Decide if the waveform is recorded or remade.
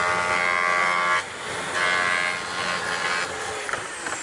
recorded